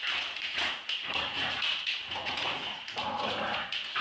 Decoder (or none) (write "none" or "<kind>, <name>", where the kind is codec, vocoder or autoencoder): vocoder, Vocos